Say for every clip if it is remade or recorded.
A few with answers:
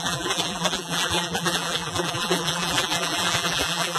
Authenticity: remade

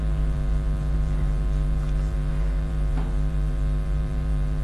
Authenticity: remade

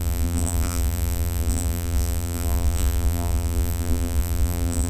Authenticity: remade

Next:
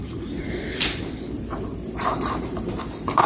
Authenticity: remade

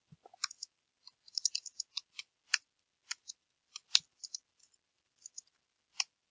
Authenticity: recorded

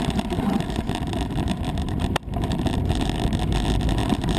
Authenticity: remade